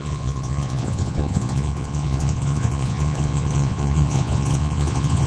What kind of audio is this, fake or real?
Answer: fake